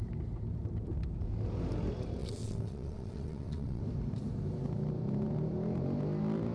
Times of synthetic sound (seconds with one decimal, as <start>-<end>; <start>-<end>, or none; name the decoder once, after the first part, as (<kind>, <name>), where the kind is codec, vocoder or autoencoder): 2.2-3.8 (vocoder, WaveNeXt)